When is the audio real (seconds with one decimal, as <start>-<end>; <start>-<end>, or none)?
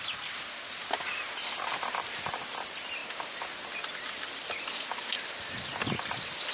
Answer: 0.0-6.5